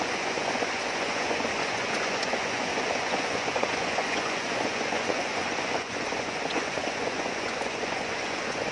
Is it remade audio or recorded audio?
remade